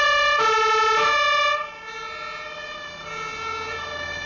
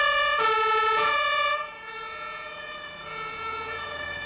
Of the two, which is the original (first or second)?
first